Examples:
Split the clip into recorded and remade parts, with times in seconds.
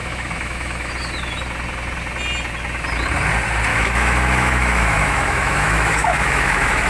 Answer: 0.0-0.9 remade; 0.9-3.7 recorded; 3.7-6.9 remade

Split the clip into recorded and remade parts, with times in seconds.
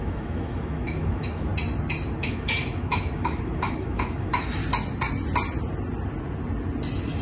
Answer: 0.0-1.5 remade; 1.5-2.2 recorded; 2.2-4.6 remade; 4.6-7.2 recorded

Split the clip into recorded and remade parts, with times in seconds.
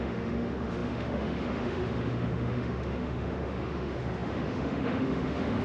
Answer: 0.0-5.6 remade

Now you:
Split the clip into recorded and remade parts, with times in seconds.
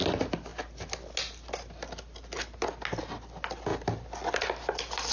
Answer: 0.0-5.1 recorded